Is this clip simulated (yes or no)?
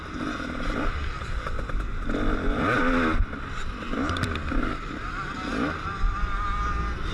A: no